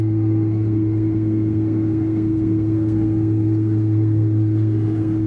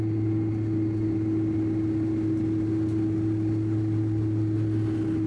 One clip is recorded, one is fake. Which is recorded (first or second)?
second